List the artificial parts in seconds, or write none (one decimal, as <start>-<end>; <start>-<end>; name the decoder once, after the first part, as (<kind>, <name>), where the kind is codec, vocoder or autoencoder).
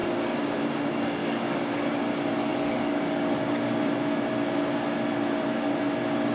1.2-2.0 (codec, DAC); 2.5-3.4